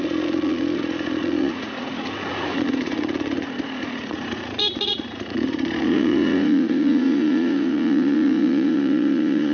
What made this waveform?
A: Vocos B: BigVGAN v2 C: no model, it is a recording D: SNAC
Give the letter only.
A